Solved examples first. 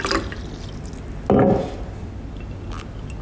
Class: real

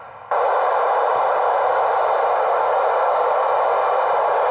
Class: real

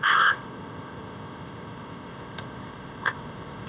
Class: fake